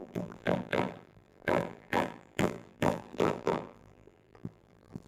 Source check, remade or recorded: remade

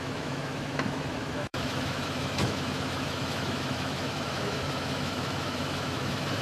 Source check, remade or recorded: remade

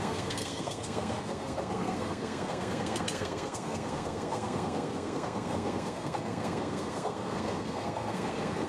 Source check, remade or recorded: remade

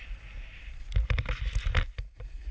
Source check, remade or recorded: recorded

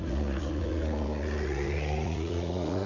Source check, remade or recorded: remade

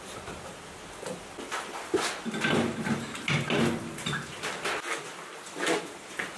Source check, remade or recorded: recorded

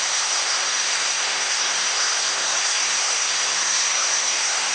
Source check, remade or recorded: remade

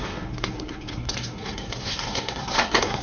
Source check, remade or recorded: remade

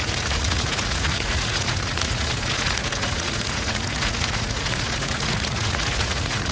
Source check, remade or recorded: remade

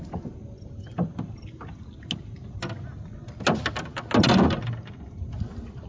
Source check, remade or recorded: recorded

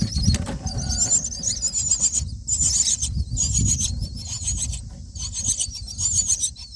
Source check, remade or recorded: recorded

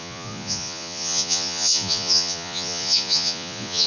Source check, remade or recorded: remade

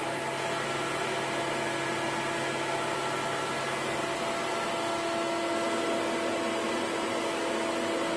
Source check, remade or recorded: recorded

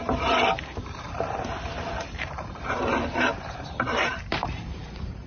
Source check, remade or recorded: remade